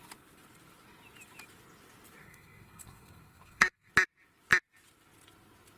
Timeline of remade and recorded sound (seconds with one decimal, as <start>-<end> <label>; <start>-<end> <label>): 0.0-2.2 recorded; 2.2-3.9 remade; 3.9-5.8 recorded